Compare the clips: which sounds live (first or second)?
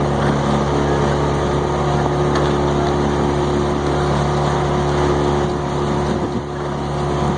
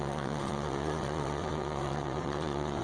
first